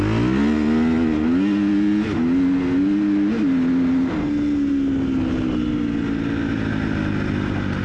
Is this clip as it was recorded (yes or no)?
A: yes